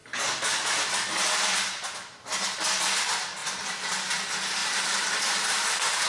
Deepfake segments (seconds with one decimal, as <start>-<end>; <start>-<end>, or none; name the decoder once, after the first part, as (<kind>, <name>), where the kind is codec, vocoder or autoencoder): 4.6-6.1 (vocoder, BigVGAN v2)